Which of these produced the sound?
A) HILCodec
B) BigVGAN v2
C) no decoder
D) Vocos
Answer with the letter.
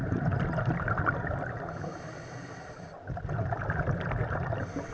C